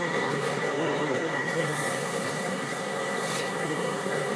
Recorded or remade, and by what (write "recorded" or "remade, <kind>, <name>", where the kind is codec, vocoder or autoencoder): remade, codec, SNAC